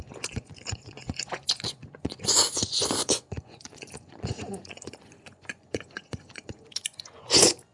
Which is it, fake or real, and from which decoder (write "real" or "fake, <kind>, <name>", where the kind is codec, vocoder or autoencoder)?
fake, vocoder, Vocos